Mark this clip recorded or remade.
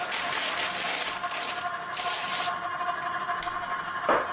recorded